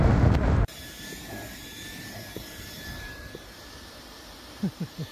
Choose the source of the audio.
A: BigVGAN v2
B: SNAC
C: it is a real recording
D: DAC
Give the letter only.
A